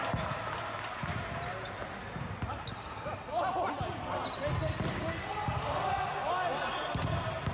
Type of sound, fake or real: real